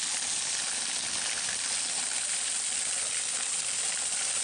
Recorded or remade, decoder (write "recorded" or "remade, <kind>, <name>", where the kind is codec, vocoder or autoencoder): recorded